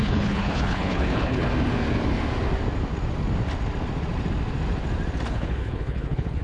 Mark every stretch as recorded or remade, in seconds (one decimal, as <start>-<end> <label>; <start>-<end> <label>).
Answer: 0.0-1.5 remade; 1.5-5.3 recorded; 5.3-6.4 remade